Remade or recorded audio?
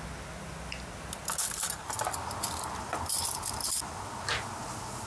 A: recorded